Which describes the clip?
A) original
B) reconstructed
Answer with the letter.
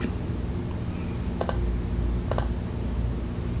A